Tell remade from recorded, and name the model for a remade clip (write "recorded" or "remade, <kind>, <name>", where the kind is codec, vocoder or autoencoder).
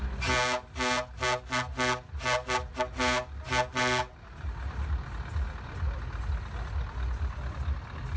recorded